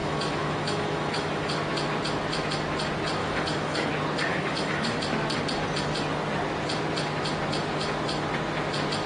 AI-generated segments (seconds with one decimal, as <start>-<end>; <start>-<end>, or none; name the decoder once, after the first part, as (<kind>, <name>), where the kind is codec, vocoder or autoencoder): 0.0-1.5 (autoencoder, DAC-VAE); 3.2-3.9; 4.3-5.0